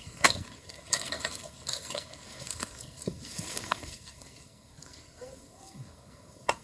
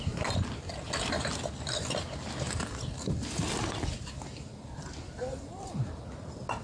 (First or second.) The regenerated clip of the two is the first